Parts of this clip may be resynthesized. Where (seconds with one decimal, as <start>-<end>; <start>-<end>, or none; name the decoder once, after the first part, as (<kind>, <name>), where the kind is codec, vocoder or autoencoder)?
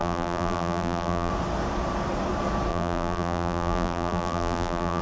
0.0-1.3 (vocoder, BigVGAN v2); 2.7-5.0